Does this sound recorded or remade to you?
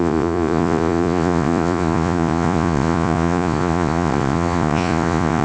remade